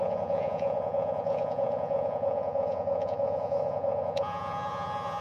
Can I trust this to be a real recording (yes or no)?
no